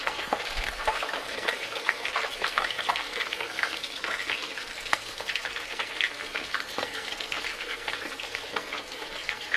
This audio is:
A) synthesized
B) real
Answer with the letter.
A